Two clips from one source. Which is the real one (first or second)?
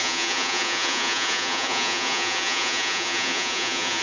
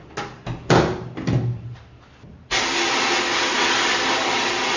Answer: second